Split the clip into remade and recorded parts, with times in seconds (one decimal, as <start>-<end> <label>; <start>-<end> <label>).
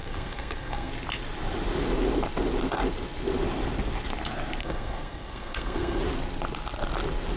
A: 0.0-0.9 remade; 0.9-4.6 recorded; 4.6-6.0 remade; 6.0-7.4 recorded